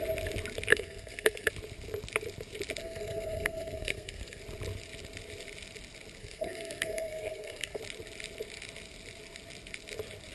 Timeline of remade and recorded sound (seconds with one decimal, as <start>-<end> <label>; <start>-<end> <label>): 0.0-0.7 recorded; 0.7-1.5 remade; 1.5-2.8 recorded; 2.8-4.4 remade; 4.4-6.2 recorded; 6.2-7.8 remade; 7.8-10.3 recorded